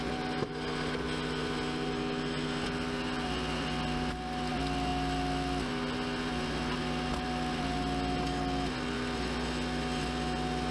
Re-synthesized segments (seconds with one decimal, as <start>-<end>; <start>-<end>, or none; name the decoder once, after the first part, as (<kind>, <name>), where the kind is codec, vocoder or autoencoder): none